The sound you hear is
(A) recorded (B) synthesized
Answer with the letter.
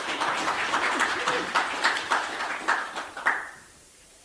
B